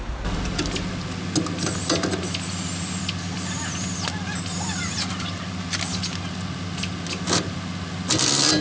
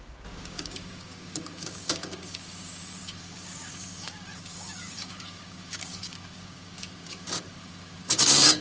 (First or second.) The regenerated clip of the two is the second